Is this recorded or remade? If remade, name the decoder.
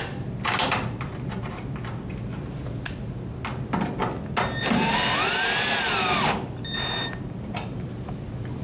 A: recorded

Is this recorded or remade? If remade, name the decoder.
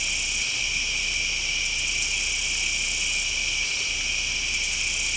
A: recorded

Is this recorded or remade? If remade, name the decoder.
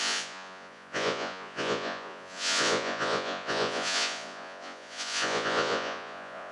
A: remade, vocoder, Vocos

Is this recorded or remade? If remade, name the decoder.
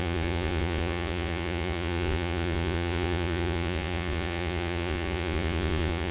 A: remade, vocoder, Vocos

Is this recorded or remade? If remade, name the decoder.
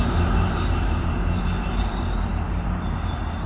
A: remade, vocoder, BigVGAN v2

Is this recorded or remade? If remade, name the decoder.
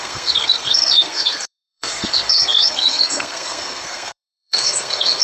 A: remade, codec, SNAC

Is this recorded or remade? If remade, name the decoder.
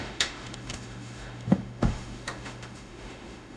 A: remade, autoencoder, DAC-VAE